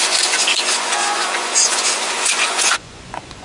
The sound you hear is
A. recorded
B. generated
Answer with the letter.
B